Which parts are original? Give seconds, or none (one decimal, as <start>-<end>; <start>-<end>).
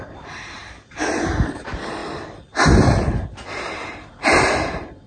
0.6-1.2; 2.0-3.6